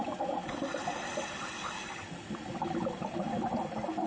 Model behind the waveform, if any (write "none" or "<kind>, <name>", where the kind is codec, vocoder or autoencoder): vocoder, BigVGAN v2